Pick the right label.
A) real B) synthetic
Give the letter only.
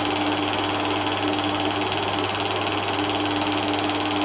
A